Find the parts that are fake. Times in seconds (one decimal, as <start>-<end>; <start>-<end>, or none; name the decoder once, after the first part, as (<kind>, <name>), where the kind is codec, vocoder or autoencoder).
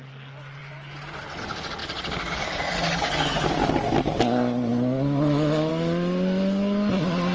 0.6-1.2 (vocoder, BigVGAN v2)